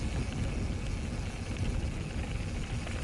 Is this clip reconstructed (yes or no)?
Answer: no